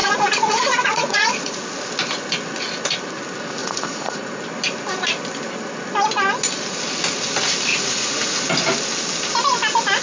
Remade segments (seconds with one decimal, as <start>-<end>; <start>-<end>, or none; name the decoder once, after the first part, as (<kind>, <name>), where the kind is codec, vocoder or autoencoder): 0.0-1.6 (vocoder, Vocos); 3.6-4.4; 7.7-8.4